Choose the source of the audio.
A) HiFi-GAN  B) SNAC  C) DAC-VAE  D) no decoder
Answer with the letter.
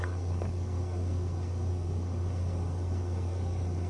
B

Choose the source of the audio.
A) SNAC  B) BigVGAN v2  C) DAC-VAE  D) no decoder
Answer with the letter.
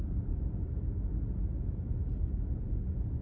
D